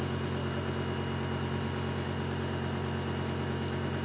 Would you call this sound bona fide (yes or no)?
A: yes